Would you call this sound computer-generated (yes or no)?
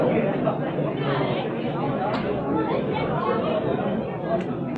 no